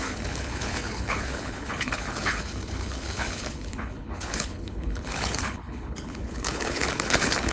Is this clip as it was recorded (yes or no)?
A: no